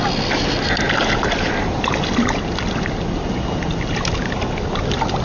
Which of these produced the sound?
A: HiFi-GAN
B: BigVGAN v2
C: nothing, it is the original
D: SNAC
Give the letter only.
C